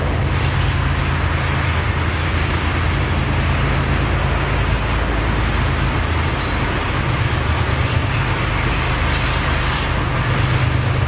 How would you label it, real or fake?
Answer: real